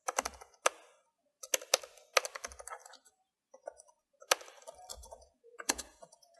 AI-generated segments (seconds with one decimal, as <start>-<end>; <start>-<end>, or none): 4.9-6.4